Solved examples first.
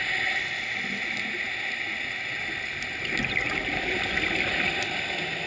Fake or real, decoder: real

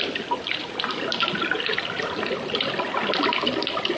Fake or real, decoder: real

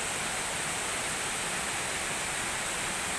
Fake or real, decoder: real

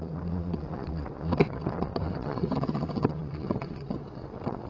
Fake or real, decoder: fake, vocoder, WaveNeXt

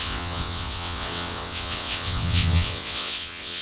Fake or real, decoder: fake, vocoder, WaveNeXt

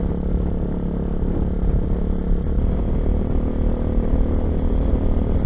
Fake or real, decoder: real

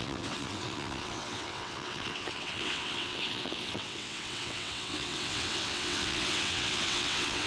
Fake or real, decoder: fake, vocoder, WaveNeXt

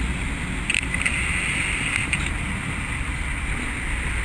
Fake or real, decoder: real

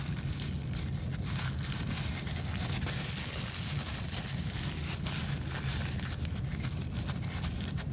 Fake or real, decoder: real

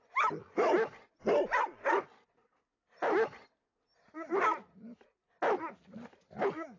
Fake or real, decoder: real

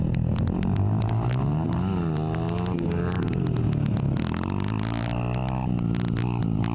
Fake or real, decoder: real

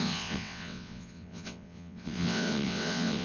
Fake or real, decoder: fake, vocoder, WaveNeXt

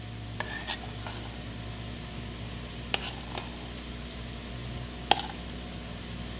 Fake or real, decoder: real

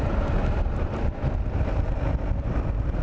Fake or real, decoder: real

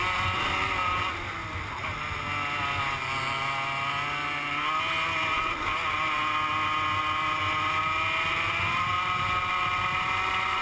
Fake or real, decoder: real